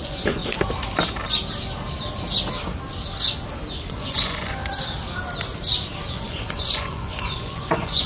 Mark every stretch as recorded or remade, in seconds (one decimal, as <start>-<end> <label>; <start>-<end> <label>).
0.0-0.4 remade; 0.4-3.9 recorded; 3.9-4.6 remade; 4.6-6.1 recorded; 6.1-8.1 remade